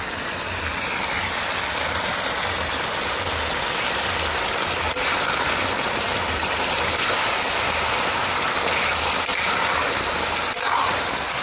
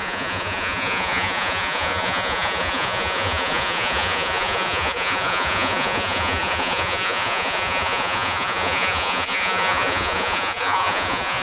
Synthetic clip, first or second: second